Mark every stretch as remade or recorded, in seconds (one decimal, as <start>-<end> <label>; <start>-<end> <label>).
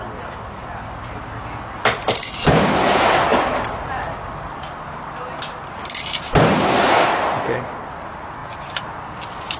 0.0-8.4 recorded; 8.4-9.0 remade; 9.0-9.6 recorded